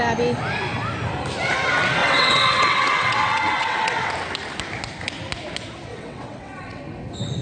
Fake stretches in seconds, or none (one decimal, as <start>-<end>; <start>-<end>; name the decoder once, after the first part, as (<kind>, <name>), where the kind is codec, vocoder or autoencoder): 2.0-4.1 (vocoder, WaveNeXt); 5.9-6.8